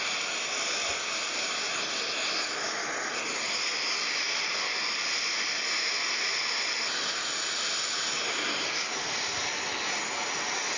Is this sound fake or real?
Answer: real